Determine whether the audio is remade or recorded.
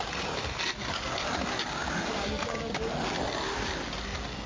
recorded